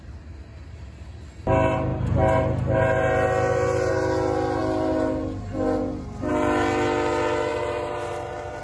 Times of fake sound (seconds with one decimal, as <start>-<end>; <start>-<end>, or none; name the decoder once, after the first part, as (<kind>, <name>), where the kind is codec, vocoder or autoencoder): 7.5-8.6 (vocoder, BigVGAN v2)